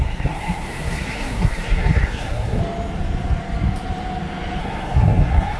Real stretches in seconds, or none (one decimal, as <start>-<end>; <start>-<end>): 2.6-4.6